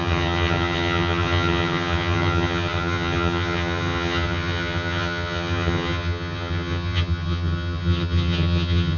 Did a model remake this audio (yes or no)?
yes